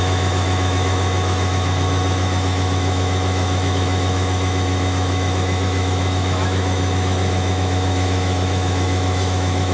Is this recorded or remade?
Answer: remade